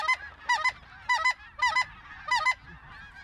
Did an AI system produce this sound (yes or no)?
no